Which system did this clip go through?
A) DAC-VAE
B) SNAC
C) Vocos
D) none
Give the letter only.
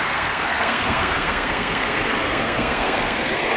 B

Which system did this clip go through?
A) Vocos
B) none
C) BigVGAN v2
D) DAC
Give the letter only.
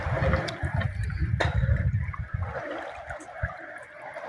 B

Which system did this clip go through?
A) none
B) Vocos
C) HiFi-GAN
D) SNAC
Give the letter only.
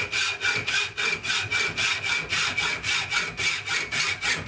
A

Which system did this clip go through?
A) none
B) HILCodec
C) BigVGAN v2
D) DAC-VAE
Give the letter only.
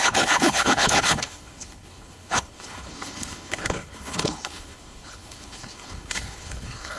B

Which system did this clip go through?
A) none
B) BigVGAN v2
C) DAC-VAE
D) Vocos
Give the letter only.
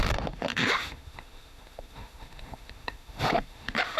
C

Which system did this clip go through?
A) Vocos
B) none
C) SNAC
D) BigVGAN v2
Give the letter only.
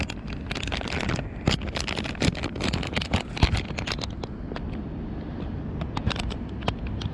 B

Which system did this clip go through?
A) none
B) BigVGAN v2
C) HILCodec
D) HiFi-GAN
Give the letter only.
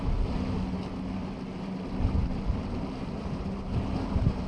A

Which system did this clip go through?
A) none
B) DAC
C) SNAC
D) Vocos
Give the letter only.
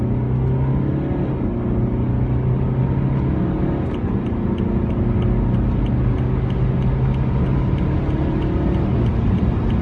A